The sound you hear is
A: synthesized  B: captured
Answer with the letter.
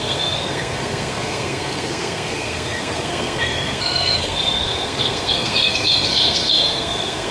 A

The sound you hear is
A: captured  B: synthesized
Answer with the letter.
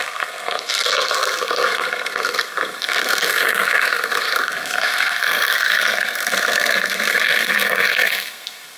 B